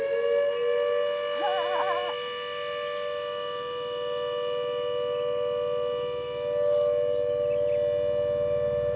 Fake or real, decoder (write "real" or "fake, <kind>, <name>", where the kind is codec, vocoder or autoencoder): real